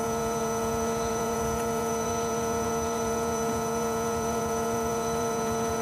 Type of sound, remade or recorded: remade